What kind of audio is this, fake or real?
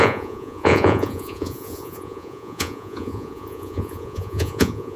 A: fake